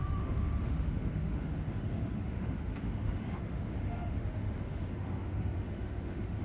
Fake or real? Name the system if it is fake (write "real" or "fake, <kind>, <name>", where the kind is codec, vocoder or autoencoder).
fake, autoencoder, DAC-VAE